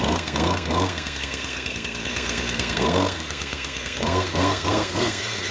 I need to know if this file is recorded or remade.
remade